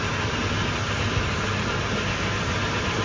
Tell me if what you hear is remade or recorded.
recorded